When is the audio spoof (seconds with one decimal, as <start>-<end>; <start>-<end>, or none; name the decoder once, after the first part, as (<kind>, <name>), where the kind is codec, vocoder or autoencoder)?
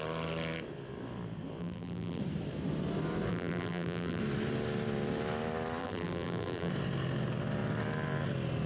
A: 1.6-2.2 (vocoder, BigVGAN v2); 3.3-4.2; 5.8-6.7